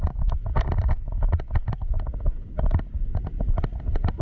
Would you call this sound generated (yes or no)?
no